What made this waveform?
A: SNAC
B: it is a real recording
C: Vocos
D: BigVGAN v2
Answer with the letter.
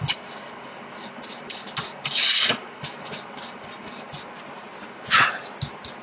B